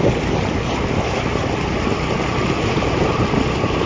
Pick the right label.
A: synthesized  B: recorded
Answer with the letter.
B